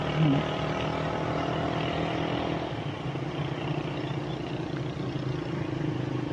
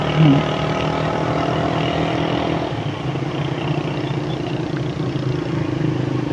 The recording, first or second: second